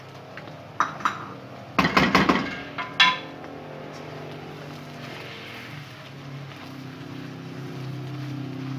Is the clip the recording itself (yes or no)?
yes